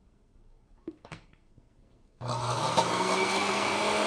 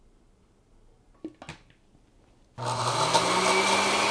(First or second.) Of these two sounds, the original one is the second